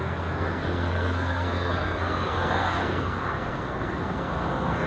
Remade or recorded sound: remade